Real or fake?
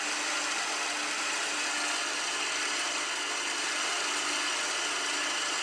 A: real